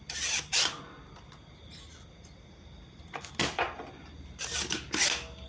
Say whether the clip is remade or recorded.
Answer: recorded